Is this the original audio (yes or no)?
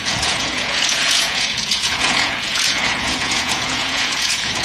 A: no